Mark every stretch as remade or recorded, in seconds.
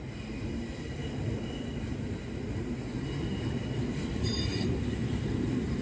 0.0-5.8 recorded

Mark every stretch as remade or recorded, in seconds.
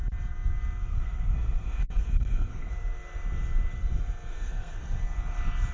0.0-0.9 recorded; 0.9-2.7 remade; 2.7-4.3 recorded; 4.3-5.0 remade; 5.0-5.7 recorded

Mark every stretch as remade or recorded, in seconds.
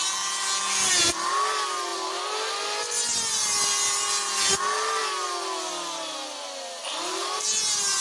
0.0-8.0 recorded